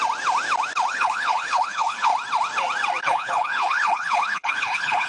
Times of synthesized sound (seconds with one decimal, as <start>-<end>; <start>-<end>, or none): 0.9-2.1; 3.0-5.1